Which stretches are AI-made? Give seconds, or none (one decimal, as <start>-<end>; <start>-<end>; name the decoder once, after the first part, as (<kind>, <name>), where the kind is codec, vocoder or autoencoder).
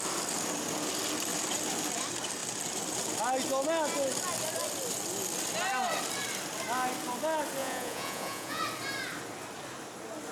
7.6-8.6 (vocoder, Vocos)